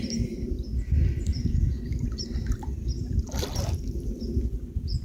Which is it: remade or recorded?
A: recorded